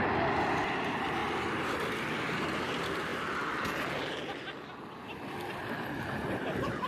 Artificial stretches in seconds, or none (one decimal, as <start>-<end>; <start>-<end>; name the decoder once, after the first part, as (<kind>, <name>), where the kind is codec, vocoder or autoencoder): 0.0-6.9 (vocoder, BigVGAN v2)